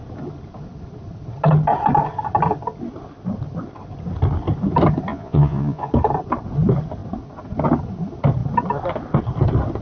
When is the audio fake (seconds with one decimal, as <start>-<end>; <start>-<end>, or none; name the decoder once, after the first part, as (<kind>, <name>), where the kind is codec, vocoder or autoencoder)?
5.1-5.9 (vocoder, Vocos)